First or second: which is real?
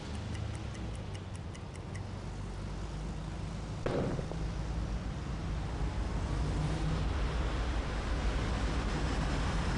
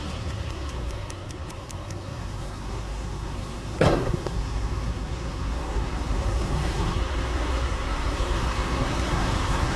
first